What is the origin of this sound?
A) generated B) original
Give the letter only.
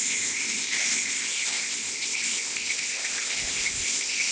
A